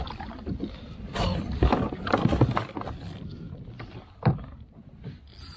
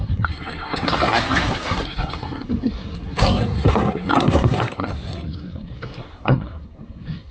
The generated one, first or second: second